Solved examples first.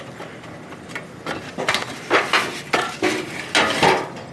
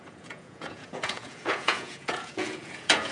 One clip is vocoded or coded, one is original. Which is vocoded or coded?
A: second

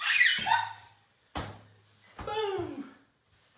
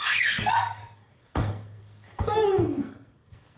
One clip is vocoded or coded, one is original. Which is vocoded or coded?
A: second